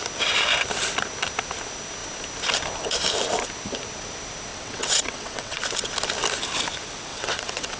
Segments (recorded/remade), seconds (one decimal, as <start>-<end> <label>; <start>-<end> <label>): 0.0-4.5 recorded; 4.5-5.6 remade; 5.6-7.1 recorded; 7.1-7.8 remade